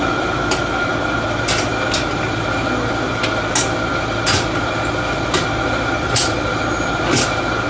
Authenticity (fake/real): real